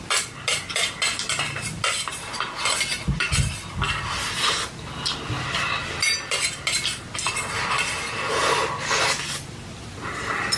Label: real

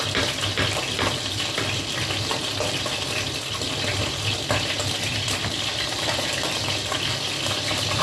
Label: real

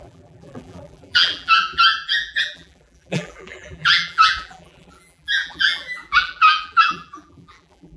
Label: fake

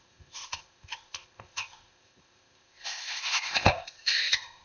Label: fake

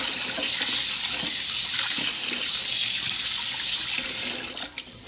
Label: real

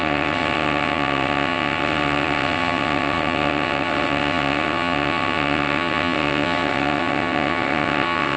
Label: fake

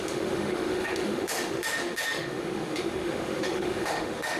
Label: fake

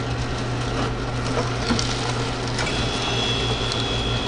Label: real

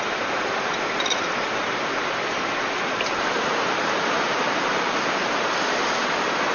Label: fake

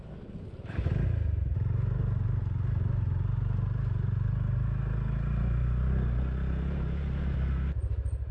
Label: real